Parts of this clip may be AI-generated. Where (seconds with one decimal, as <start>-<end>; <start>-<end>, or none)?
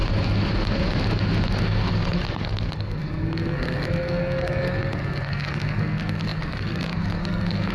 1.6-7.7